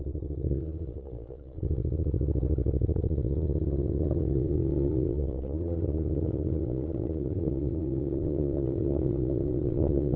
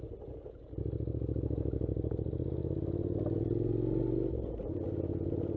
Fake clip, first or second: first